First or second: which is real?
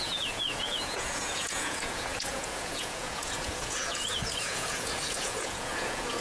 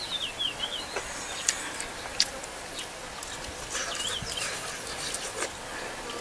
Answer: second